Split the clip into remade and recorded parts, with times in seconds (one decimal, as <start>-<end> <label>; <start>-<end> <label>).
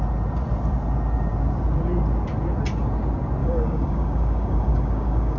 0.0-3.4 recorded; 3.4-5.4 remade